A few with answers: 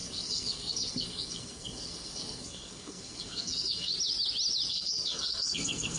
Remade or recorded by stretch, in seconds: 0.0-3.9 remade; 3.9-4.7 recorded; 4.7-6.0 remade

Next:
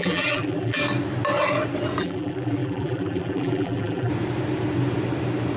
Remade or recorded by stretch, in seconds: 0.0-0.8 remade; 0.8-2.0 recorded; 2.0-4.1 remade; 4.1-5.6 recorded

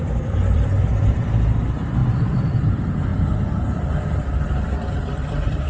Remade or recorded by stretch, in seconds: 0.0-3.1 remade; 3.1-3.7 recorded; 3.7-5.7 remade

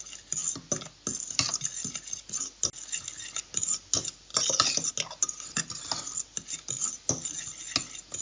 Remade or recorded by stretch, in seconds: 0.0-8.2 recorded

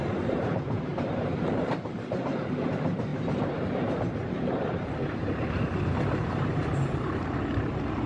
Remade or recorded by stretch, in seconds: 0.0-0.9 remade; 0.9-1.4 recorded; 1.4-8.1 remade

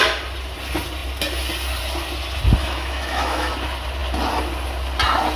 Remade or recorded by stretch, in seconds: 0.0-2.6 recorded; 2.6-3.5 remade; 3.5-5.4 recorded

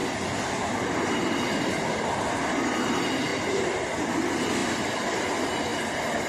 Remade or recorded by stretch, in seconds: 0.0-1.1 remade; 1.1-3.3 recorded; 3.3-3.9 remade; 3.9-4.6 recorded; 4.6-5.2 remade; 5.2-5.7 recorded; 5.7-6.3 remade